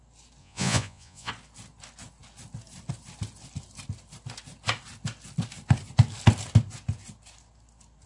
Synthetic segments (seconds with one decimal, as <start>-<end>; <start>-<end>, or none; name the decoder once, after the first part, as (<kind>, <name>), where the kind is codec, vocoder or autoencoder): 0.4-1.3 (vocoder, Vocos)